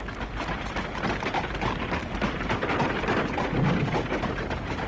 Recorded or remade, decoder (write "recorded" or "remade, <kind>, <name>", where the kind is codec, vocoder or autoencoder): recorded